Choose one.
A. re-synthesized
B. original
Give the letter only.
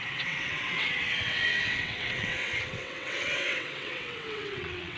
A